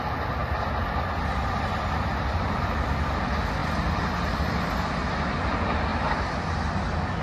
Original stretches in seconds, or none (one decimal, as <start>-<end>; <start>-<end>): 0.0-5.9